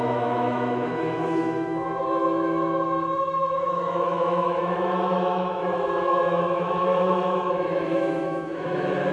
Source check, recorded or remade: remade